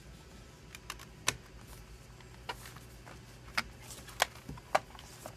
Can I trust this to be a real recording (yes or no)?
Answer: yes